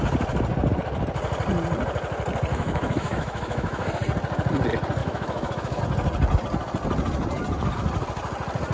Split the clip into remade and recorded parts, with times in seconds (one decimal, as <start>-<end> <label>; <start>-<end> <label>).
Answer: 0.0-2.5 recorded; 2.5-3.9 remade; 3.9-5.0 recorded; 5.0-5.8 remade; 5.8-8.7 recorded